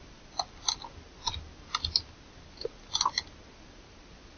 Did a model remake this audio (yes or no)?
no